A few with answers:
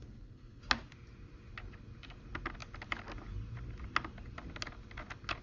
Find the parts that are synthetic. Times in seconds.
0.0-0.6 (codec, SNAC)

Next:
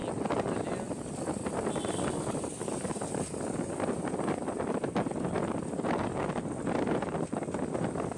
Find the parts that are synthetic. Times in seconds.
none

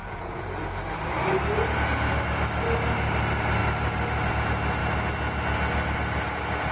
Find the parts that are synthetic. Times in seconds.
0.0-0.6 (vocoder, Vocos)